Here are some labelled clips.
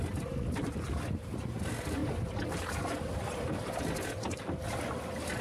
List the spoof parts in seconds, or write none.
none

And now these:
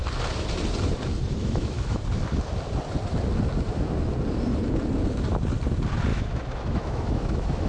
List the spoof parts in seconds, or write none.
1.4-2.0; 6.1-7.7

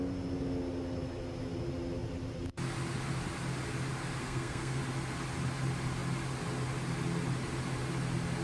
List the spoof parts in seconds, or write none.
4.2-4.8

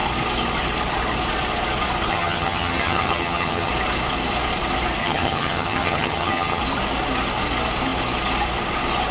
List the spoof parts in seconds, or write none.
2.1-3.7; 5.0-6.6